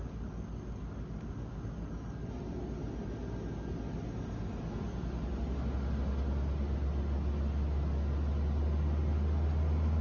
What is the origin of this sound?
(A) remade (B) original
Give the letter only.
B